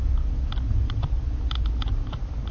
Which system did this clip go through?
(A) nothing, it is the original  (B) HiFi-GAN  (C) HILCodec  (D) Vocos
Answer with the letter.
A